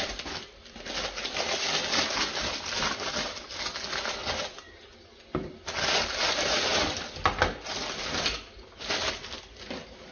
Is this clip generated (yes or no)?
no